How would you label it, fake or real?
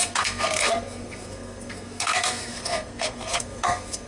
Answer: fake